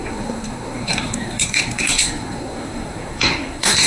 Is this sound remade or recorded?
remade